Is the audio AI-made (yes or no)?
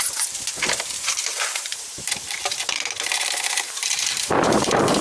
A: yes